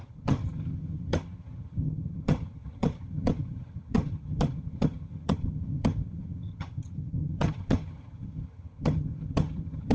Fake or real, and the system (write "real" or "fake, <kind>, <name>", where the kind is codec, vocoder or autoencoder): fake, vocoder, HiFi-GAN